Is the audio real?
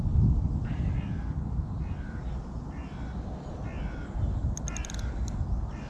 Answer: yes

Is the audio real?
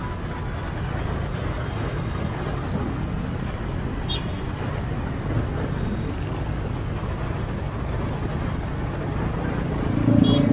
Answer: yes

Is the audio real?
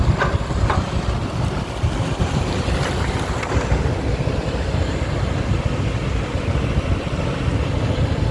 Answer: yes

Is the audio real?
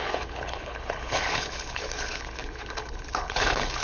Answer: no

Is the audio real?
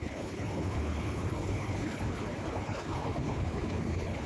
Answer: no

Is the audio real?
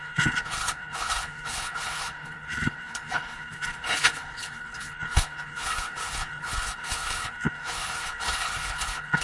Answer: no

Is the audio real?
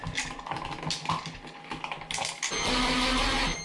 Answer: yes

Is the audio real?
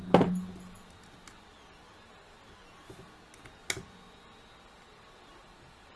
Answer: yes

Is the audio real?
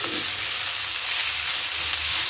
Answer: yes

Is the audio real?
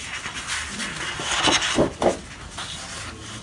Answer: yes